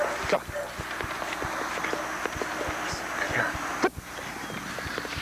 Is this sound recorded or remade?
recorded